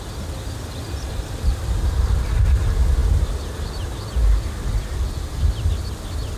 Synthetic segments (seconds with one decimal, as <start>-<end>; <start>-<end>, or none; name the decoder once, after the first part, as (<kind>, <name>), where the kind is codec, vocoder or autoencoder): none